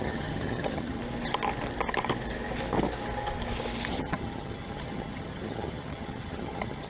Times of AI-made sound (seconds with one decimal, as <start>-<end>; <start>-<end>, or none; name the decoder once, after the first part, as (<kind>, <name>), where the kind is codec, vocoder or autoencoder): 0.0-1.0 (vocoder, HiFi-GAN); 3.9-6.9